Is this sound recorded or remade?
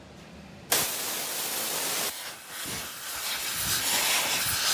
recorded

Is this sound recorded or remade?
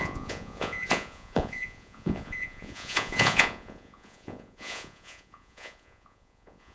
remade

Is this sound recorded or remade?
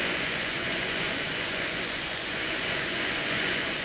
remade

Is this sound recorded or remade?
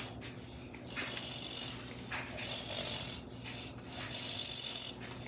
recorded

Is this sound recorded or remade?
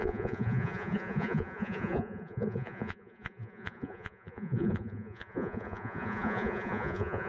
remade